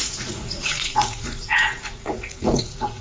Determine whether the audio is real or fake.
fake